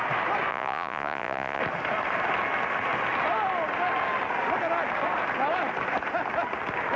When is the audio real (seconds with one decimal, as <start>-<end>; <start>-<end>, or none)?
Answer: 0.0-0.5; 1.6-7.0